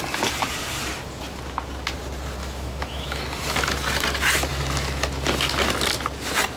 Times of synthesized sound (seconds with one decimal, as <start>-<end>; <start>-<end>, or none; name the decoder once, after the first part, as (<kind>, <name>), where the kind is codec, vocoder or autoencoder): 2.4-3.2 (autoencoder, DAC-VAE)